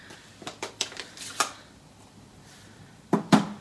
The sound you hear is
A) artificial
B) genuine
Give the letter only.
B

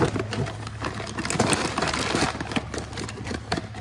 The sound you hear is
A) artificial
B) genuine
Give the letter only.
B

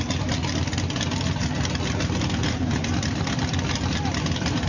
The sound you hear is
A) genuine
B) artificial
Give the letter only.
A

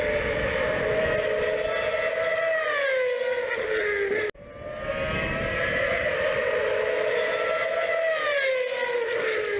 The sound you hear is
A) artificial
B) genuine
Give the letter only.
B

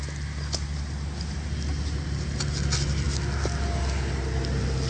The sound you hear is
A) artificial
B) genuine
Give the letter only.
B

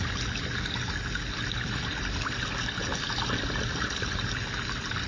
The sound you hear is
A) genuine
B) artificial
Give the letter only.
A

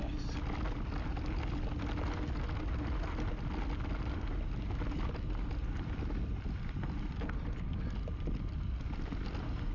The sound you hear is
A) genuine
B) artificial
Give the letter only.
A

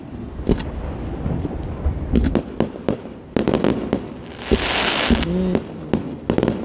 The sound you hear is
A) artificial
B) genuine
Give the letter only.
B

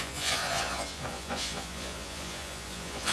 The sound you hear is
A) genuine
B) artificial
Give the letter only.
B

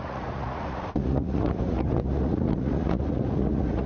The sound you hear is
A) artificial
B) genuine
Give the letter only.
A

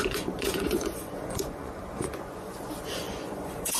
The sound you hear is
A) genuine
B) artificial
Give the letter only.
B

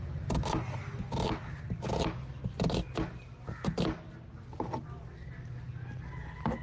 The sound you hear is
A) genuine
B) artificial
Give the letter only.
A